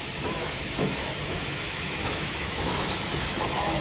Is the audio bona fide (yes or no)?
no